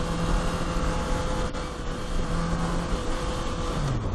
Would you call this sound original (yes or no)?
yes